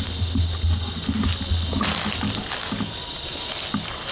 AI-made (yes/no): no